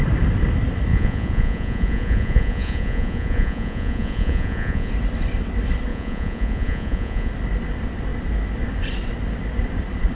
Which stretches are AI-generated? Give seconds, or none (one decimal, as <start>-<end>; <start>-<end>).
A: 0.9-4.9; 5.9-7.3